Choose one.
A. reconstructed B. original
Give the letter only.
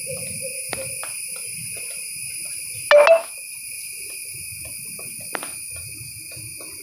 B